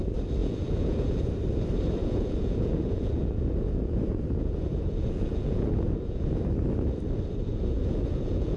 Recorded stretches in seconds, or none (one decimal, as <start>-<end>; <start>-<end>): 0.0-0.4; 1.3-2.0; 6.4-7.5